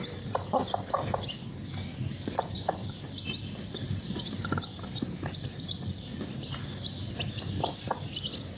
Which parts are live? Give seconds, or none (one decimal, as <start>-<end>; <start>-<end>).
4.7-5.3; 6.1-7.2